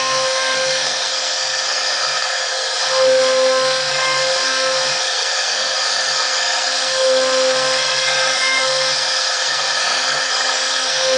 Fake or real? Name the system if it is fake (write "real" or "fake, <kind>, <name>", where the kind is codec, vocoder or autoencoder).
fake, codec, SNAC